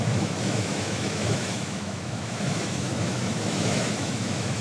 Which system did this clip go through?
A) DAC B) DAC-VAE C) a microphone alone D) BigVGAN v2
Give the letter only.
B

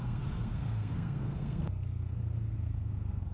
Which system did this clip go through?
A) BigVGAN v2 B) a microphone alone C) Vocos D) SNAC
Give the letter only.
D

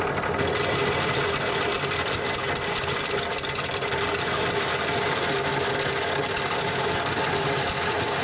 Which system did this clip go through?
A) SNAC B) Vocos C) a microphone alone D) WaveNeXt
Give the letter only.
C